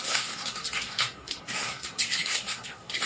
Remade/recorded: remade